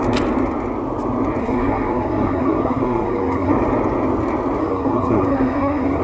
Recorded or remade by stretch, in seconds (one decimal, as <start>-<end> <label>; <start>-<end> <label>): 0.0-1.4 recorded; 1.4-3.5 remade; 3.5-4.6 recorded; 4.6-6.0 remade